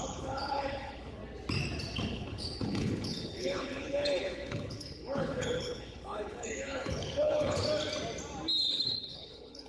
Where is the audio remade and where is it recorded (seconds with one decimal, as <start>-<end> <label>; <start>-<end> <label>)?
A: 0.0-1.2 remade; 1.2-2.1 recorded; 2.1-7.6 remade; 7.6-8.7 recorded; 8.7-9.7 remade